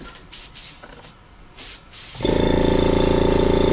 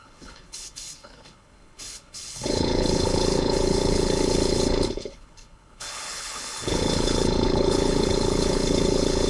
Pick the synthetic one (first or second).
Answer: second